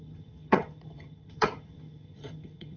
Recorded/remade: remade